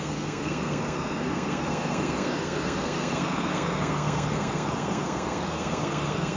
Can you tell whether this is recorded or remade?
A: remade